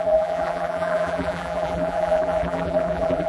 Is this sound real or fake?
fake